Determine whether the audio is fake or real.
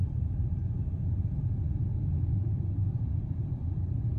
real